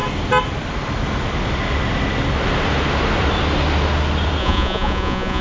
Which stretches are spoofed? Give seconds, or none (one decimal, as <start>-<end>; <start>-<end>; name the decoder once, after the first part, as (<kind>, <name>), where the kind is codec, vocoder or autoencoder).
4.4-5.4 (vocoder, Vocos)

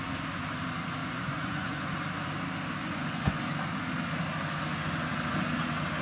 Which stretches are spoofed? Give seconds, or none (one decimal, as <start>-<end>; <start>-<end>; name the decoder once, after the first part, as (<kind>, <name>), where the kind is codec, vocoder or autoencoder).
1.0-1.9 (vocoder, Vocos); 2.8-3.5

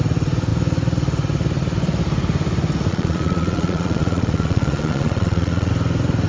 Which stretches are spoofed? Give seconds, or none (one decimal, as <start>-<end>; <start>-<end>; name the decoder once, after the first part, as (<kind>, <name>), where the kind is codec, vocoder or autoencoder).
2.9-5.7 (vocoder, Vocos)

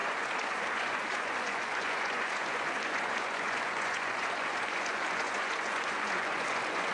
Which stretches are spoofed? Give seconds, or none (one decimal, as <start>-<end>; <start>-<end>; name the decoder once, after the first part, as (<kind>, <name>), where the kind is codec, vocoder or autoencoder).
0.0-6.9 (vocoder, Vocos)